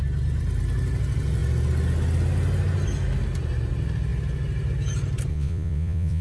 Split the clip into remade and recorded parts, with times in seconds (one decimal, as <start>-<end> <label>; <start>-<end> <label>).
0.0-5.3 recorded; 5.3-6.2 remade